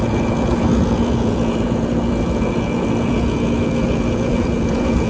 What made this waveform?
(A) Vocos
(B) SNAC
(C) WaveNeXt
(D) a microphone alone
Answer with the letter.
A